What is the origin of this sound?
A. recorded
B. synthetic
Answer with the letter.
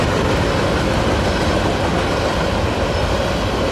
A